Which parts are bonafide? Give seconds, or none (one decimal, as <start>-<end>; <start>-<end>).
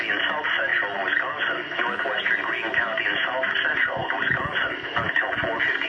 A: 0.0-5.9